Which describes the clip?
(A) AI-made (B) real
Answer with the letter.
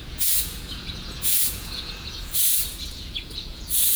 A